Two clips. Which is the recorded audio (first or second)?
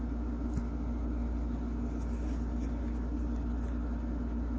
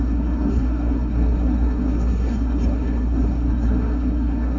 first